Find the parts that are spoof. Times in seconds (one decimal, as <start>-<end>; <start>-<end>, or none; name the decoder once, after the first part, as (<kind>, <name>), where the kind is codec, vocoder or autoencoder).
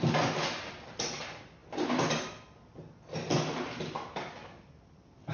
none